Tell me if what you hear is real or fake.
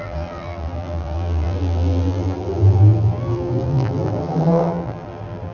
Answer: fake